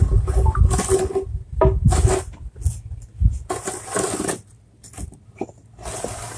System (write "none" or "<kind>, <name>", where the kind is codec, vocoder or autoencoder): none